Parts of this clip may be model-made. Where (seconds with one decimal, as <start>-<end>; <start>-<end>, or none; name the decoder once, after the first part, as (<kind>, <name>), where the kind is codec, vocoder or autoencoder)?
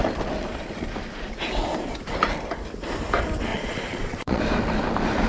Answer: 3.5-4.4 (vocoder, Vocos)